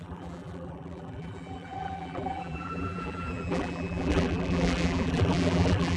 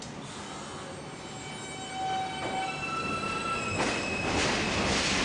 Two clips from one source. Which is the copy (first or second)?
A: first